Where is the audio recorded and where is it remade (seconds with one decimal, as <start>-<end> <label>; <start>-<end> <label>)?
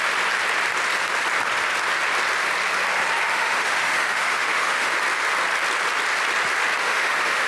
0.0-3.3 recorded; 3.3-4.9 remade; 4.9-6.8 recorded; 6.8-7.5 remade